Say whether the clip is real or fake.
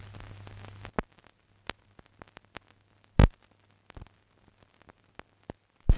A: fake